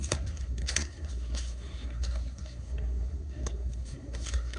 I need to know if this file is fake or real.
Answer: fake